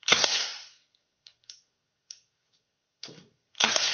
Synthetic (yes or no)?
yes